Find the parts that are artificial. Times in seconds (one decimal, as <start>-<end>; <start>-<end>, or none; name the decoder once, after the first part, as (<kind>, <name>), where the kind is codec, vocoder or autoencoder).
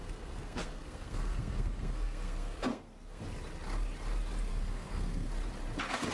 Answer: 0.0-3.2 (codec, SNAC); 4.5-5.3